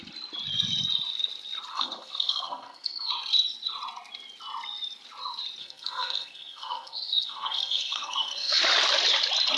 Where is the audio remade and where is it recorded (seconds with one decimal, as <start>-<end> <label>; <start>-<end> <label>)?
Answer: 0.0-1.7 recorded; 1.7-3.1 remade; 3.1-5.6 recorded; 5.6-8.6 remade; 8.6-9.6 recorded